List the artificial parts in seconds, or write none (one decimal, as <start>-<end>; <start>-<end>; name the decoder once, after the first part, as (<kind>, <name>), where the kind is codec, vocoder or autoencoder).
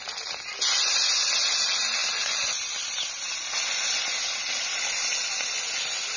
2.0-3.5 (vocoder, BigVGAN v2)